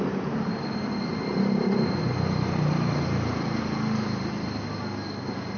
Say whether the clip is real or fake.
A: real